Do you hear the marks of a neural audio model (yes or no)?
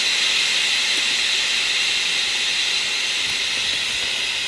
no